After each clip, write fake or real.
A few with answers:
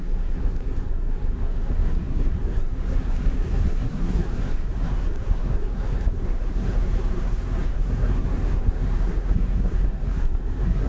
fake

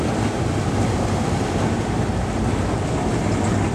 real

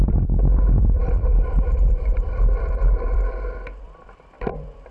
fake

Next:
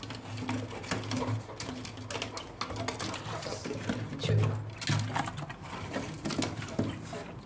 real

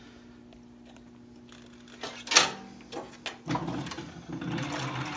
real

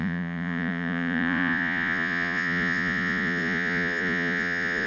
fake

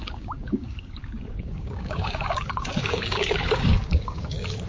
fake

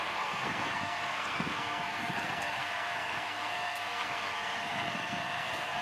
fake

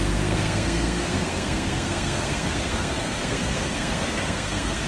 fake